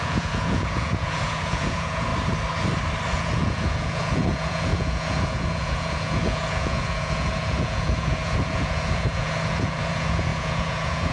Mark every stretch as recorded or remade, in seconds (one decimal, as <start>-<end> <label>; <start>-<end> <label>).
0.0-2.1 remade; 2.1-3.1 recorded; 3.1-11.1 remade